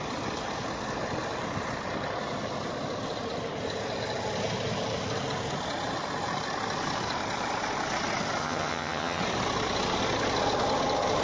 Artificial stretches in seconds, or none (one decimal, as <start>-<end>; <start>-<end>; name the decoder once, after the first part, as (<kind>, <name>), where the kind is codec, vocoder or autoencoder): 8.4-9.2 (vocoder, HiFi-GAN)